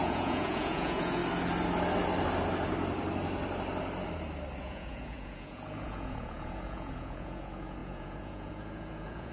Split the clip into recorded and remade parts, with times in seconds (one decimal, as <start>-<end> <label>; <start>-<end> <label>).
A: 0.0-1.2 remade; 1.2-4.6 recorded; 4.6-9.3 remade